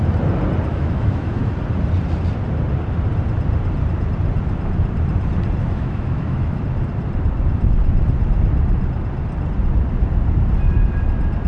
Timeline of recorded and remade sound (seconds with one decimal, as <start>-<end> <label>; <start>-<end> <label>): 0.0-0.7 recorded; 0.7-1.4 remade; 1.4-5.6 recorded; 5.6-6.6 remade; 6.6-11.5 recorded